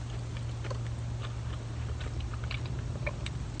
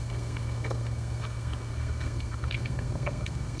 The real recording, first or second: first